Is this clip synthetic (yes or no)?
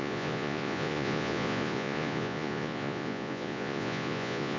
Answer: yes